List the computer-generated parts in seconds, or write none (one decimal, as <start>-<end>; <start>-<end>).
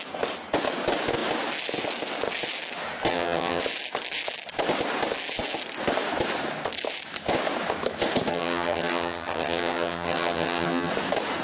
3.1-3.6; 8.3-10.9